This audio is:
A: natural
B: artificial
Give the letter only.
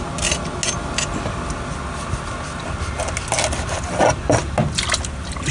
A